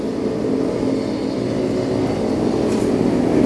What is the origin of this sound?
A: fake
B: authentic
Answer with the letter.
B